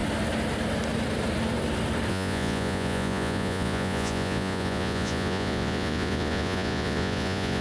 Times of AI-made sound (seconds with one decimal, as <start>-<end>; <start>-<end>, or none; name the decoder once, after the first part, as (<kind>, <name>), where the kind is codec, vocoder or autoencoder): 2.1-7.6 (vocoder, Vocos)